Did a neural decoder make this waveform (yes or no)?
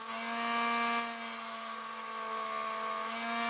no